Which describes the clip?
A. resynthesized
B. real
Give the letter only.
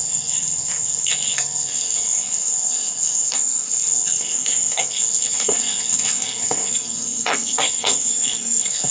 A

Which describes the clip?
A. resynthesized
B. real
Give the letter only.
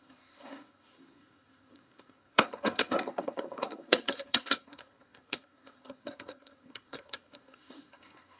A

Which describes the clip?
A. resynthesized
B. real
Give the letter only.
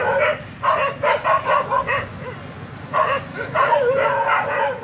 B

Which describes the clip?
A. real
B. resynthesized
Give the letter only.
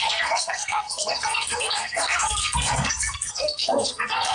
B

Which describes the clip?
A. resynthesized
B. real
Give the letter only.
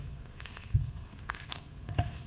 A